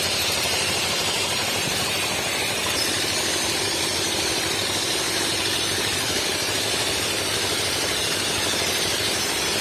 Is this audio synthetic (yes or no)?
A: yes